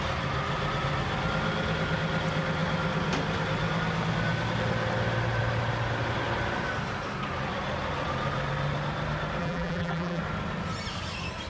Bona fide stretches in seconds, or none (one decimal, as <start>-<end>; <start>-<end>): 0.0-9.4; 10.2-11.5